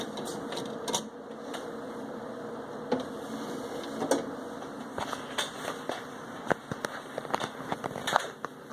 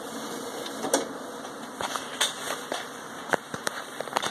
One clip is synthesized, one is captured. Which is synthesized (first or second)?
second